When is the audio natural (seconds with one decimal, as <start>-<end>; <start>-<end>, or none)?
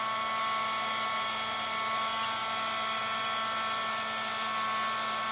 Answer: 0.0-5.3